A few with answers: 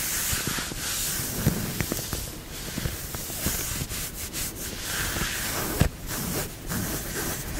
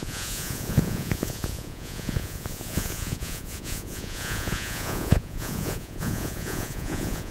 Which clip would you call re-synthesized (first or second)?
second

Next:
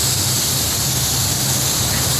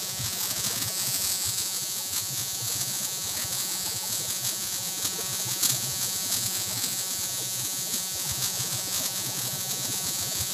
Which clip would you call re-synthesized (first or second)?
second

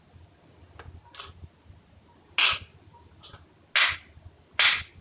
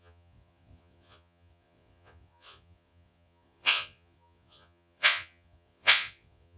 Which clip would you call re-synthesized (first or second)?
second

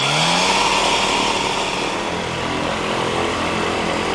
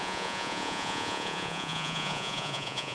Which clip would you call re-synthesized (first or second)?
second